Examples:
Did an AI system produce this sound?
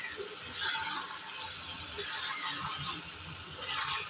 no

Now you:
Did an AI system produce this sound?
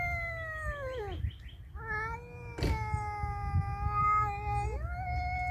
no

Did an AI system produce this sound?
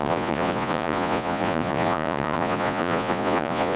yes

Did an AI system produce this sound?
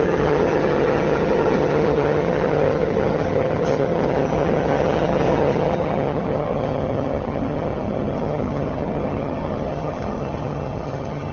yes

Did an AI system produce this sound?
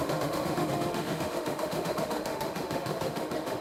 yes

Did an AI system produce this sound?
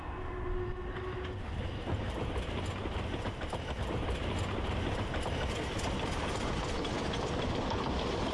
no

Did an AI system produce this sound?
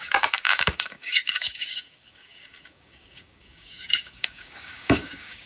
yes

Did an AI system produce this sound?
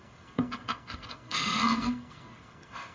yes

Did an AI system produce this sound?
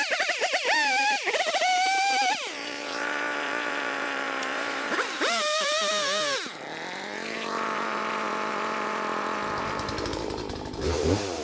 yes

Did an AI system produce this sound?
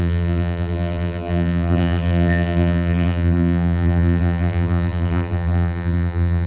yes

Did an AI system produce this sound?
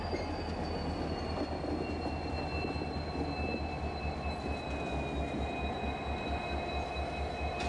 no